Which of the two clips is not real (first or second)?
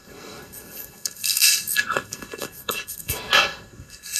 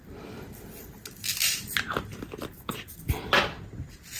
first